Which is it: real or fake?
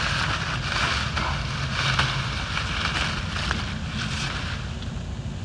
real